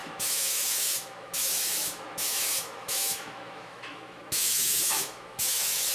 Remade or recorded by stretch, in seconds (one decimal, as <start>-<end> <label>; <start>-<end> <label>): 0.0-5.9 remade